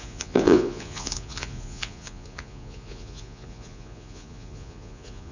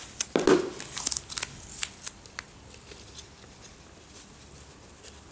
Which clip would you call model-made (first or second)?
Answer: first